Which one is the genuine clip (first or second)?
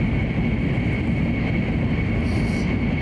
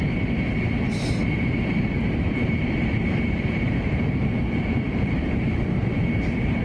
first